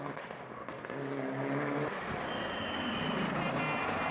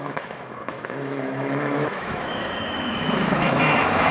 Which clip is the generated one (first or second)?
second